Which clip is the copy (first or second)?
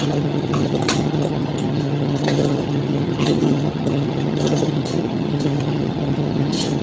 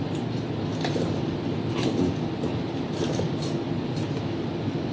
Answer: first